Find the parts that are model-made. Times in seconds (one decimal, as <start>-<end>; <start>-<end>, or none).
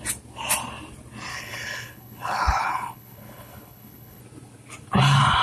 1.3-4.2